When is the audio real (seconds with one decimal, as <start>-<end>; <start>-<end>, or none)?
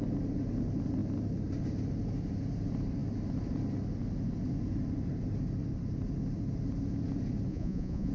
0.0-7.5